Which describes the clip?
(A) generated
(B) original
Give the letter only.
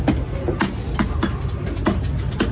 B